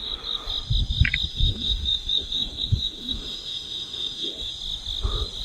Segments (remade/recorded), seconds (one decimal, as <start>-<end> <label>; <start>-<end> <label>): 0.0-1.3 recorded; 1.3-4.5 remade; 4.5-5.4 recorded